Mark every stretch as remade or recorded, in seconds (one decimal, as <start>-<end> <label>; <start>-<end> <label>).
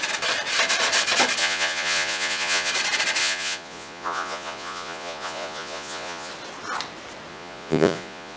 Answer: 0.0-1.4 recorded; 1.4-2.7 remade; 2.7-3.2 recorded; 3.2-6.3 remade; 6.3-7.3 recorded; 7.3-8.4 remade